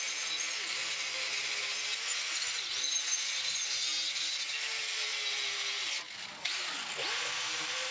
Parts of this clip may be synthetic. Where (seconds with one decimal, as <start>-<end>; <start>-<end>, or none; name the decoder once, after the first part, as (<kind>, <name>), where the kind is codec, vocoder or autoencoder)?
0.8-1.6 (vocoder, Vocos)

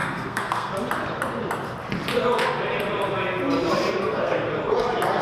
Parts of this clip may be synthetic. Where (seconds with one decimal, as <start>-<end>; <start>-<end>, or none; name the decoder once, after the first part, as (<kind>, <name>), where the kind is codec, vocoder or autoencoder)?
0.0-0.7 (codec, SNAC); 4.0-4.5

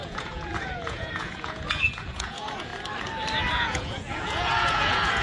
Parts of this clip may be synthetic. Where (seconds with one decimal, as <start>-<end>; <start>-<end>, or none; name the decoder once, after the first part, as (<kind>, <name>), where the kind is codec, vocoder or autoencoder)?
0.0-2.7 (vocoder, Vocos); 3.5-5.2

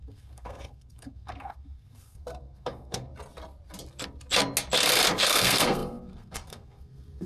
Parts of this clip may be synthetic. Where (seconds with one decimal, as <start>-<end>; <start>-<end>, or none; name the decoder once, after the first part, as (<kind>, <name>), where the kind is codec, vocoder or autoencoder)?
0.0-3.1 (codec, SNAC); 5.1-7.3

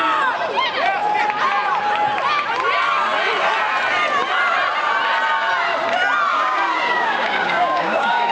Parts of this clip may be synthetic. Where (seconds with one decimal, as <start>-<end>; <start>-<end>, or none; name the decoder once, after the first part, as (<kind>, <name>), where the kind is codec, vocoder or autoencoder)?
6.3-8.3 (codec, DAC)

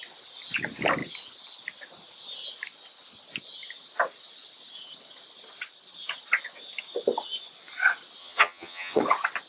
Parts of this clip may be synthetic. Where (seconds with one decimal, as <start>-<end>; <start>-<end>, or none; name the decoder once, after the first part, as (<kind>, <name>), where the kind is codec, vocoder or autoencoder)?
8.2-9.0 (vocoder, HiFi-GAN)

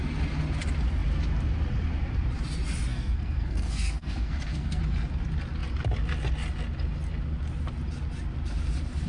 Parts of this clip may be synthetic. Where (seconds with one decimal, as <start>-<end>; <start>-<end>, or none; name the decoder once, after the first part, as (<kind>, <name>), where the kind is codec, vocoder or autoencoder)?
2.9-4.8 (codec, SNAC)

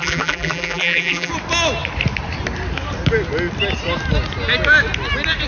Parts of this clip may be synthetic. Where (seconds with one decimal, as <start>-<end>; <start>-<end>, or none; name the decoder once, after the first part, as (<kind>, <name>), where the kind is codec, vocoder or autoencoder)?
0.0-1.3 (vocoder, BigVGAN v2)